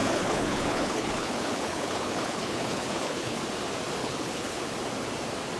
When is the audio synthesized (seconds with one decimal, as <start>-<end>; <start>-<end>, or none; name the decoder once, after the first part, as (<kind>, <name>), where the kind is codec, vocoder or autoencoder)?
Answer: 0.0-3.4 (codec, HILCodec); 4.0-4.6